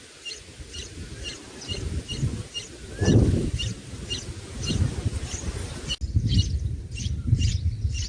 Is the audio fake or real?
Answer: real